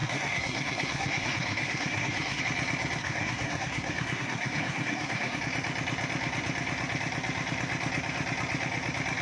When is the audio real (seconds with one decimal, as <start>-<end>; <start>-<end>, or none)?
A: 2.4-3.0; 5.4-9.2